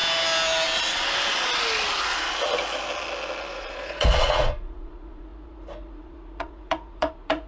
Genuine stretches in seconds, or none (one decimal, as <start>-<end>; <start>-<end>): 0.0-3.5

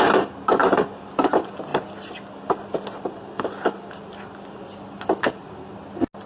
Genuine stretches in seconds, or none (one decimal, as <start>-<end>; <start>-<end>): 0.0-0.6; 1.1-6.3

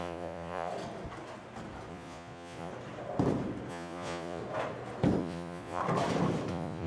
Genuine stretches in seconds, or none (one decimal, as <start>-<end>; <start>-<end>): 0.7-1.9; 2.7-3.7; 4.4-5.2; 5.8-6.5